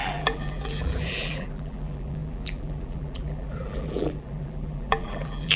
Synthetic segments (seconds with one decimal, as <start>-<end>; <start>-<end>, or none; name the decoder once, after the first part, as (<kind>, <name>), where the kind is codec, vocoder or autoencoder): 0.0-5.6 (vocoder, BigVGAN v2)